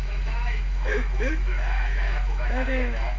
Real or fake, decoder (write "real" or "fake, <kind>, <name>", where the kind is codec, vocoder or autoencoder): fake, autoencoder, DAC-VAE